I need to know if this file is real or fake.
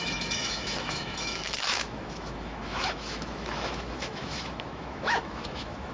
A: fake